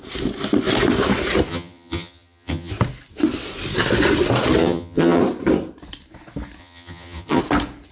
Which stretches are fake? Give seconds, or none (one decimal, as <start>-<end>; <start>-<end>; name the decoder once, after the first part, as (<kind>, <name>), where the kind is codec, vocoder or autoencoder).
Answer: 1.5-2.7 (vocoder, HiFi-GAN); 4.6-5.2; 6.6-7.4